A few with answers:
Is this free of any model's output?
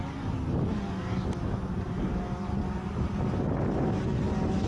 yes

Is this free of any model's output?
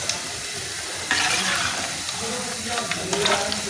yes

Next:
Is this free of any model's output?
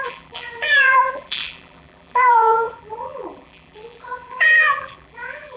no